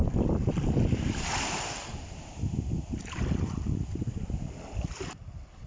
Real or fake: real